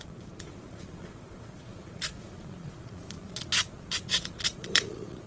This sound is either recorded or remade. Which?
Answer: remade